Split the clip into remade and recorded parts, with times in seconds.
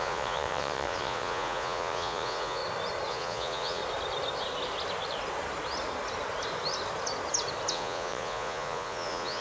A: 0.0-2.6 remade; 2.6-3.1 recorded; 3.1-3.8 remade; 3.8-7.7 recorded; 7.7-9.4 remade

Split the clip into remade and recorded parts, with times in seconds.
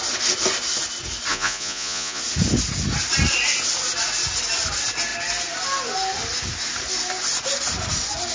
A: 0.0-1.3 recorded; 1.3-2.2 remade; 2.2-8.3 recorded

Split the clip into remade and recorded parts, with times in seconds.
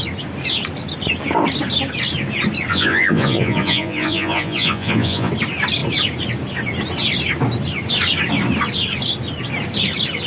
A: 0.0-2.7 recorded; 2.7-5.3 remade; 5.3-10.3 recorded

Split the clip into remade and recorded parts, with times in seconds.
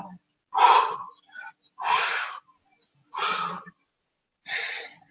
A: 0.0-3.2 recorded; 3.2-5.1 remade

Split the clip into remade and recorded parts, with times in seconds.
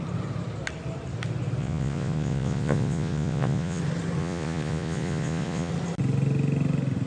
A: 0.0-1.6 recorded; 1.6-3.8 remade; 3.8-4.2 recorded; 4.2-5.7 remade; 5.7-7.1 recorded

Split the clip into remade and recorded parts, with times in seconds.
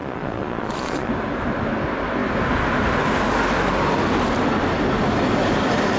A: 0.0-1.1 remade; 1.1-6.0 recorded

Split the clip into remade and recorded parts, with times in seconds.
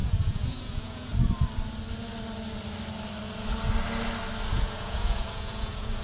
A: 0.0-1.1 remade; 1.1-4.5 recorded; 4.5-6.0 remade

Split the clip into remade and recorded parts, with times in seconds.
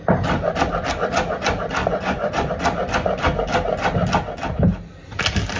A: 0.0-1.8 recorded; 1.8-2.5 remade; 2.5-5.6 recorded